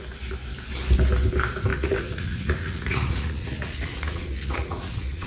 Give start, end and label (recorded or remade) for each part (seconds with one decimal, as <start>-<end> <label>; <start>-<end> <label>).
0.0-1.7 recorded; 1.7-5.3 remade